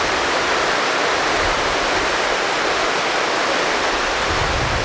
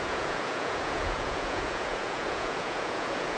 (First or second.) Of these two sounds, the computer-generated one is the second